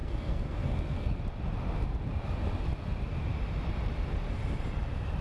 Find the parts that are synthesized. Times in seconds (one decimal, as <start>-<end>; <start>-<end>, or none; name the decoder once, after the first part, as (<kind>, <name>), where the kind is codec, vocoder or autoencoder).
0.0-1.2 (codec, SNAC)